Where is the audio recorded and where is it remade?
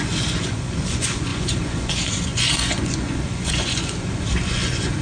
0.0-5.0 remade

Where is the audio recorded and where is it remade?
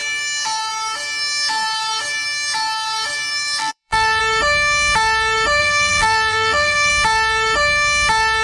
0.0-3.6 recorded; 3.6-4.2 remade; 4.2-5.6 recorded; 5.6-6.9 remade; 6.9-8.4 recorded